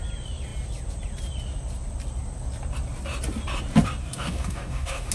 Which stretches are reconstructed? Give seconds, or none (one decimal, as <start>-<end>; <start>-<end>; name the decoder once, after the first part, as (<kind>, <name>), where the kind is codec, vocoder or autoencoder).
4.0-5.1 (codec, DAC)